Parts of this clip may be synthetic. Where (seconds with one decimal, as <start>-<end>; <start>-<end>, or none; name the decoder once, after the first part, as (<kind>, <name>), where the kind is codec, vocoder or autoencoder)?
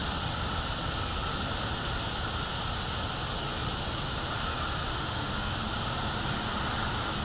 4.9-5.6 (autoencoder, DAC-VAE)